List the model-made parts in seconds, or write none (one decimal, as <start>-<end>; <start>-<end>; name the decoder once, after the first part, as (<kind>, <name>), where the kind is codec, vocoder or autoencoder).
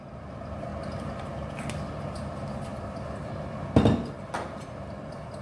none